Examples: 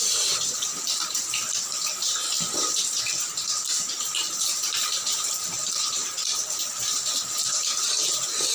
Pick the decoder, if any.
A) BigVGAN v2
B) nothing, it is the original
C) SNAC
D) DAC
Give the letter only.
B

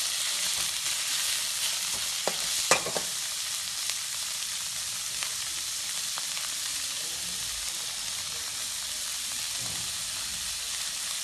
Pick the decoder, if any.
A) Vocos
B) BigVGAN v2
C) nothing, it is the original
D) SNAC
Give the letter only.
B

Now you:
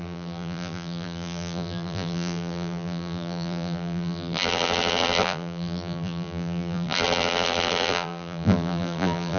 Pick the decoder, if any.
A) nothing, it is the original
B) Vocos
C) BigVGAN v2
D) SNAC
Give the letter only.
C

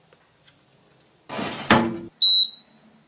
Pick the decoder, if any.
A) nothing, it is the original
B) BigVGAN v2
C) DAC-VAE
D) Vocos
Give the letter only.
A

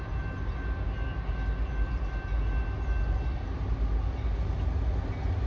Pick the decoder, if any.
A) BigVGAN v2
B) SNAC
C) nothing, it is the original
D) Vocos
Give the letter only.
C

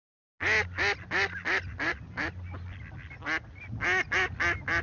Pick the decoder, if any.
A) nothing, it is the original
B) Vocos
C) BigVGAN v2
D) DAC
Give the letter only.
A